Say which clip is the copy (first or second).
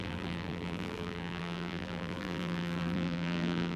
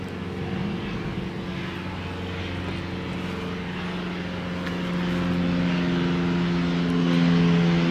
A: first